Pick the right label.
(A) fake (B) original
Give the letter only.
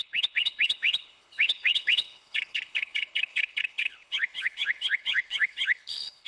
A